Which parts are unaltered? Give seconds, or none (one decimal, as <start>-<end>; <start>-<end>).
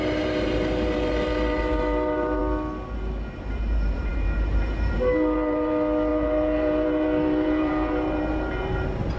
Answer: 2.4-3.4